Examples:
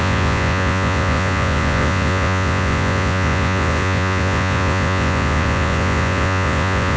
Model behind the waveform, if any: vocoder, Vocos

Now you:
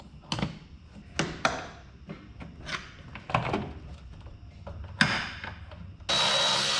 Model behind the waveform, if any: none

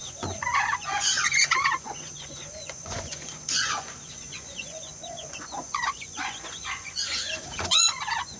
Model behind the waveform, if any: vocoder, Vocos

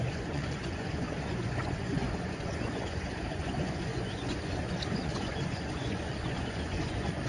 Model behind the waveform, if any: vocoder, Vocos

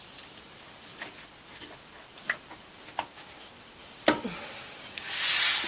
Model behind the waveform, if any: none